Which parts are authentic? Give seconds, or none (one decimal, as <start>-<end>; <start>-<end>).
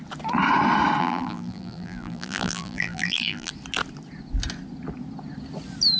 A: 0.0-1.0; 3.5-6.0